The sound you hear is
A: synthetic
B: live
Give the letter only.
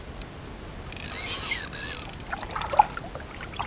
B